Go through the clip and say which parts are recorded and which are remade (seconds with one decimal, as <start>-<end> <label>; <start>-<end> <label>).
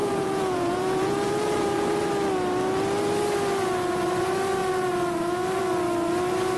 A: 0.0-2.1 remade; 2.1-6.6 recorded